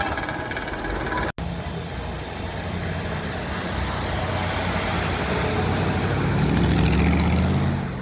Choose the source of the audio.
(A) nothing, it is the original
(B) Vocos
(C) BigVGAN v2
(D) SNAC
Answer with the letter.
A